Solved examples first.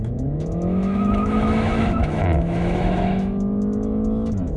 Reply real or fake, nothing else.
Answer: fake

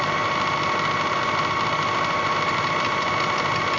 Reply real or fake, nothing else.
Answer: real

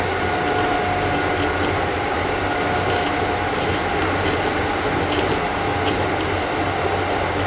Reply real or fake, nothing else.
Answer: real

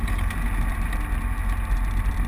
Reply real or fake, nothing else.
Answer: real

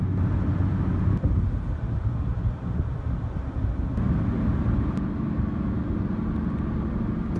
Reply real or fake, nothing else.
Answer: real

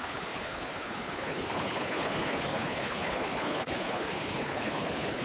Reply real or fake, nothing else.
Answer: fake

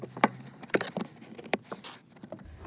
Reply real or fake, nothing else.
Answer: fake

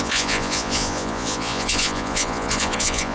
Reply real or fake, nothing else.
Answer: fake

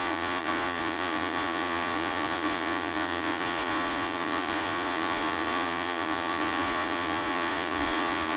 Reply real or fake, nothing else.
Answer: fake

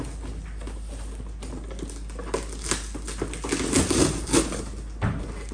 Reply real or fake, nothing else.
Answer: real